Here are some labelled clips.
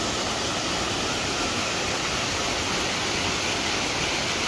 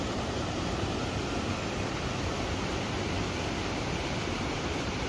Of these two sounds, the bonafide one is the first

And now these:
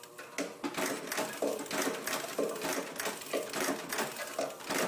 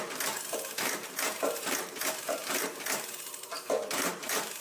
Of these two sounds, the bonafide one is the first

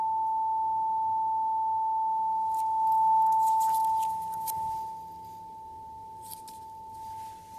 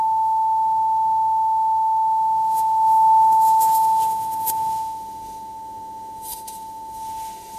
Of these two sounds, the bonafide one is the first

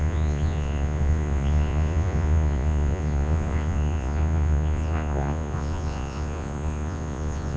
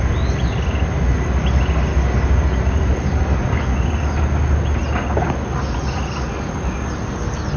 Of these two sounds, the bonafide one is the second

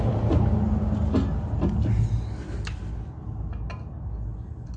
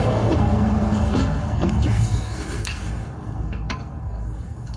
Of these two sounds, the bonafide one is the first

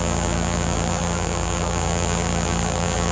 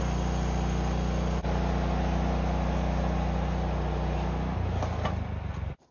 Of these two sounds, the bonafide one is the second